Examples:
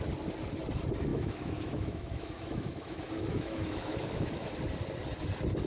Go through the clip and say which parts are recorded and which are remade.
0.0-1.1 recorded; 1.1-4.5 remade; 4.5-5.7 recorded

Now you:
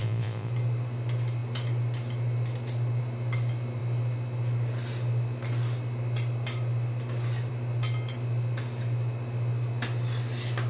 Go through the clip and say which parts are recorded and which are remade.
0.0-0.5 remade; 0.5-10.7 recorded

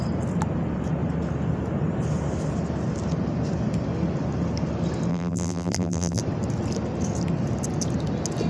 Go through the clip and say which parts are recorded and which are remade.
0.0-5.1 recorded; 5.1-6.2 remade; 6.2-8.5 recorded

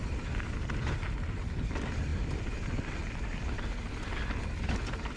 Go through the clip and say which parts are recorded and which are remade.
0.0-5.2 recorded

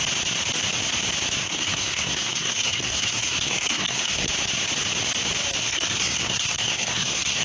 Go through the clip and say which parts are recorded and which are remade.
0.0-1.4 recorded; 1.4-4.3 remade; 4.3-5.6 recorded; 5.6-7.4 remade

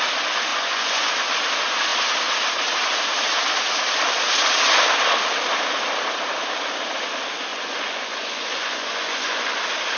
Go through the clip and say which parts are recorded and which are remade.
0.0-0.5 recorded; 0.5-1.1 remade; 1.1-7.5 recorded; 7.5-9.6 remade; 9.6-10.0 recorded